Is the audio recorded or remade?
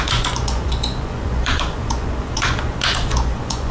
remade